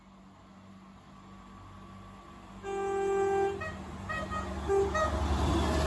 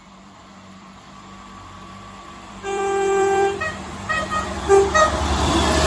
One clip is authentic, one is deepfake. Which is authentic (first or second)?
first